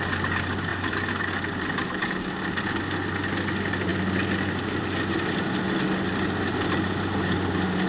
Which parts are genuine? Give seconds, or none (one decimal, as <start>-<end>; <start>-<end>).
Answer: 0.0-7.9